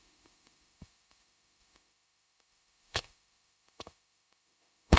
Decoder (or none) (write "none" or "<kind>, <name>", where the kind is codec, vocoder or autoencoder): autoencoder, DAC-VAE